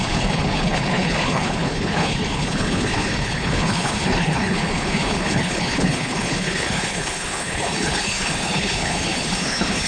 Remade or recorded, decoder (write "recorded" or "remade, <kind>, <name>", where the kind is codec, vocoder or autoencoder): remade, codec, HILCodec